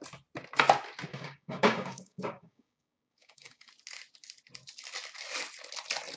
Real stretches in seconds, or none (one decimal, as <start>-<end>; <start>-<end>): 0.0-1.1; 3.7-6.2